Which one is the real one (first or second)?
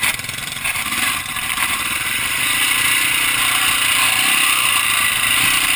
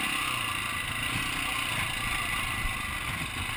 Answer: second